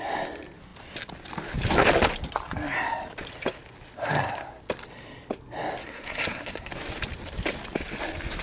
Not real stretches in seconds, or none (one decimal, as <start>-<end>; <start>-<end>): 4.0-4.6; 5.8-6.7